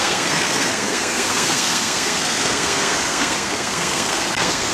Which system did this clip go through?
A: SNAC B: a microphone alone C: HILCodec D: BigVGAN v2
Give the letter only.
A